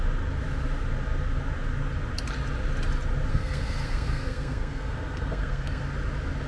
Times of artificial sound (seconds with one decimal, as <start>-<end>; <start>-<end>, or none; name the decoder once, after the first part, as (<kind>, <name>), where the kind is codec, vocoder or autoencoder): 3.3-5.8 (codec, SNAC)